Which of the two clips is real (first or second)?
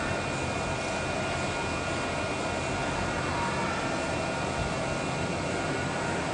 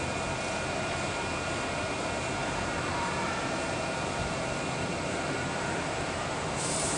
first